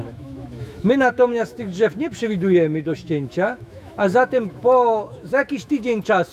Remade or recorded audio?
remade